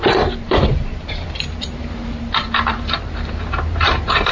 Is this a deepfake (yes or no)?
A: yes